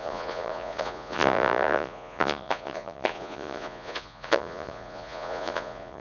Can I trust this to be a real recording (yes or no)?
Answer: no